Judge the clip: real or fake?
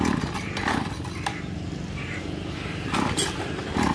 real